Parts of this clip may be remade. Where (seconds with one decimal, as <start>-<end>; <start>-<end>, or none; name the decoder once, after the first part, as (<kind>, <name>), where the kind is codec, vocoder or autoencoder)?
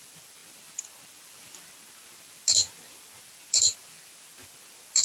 none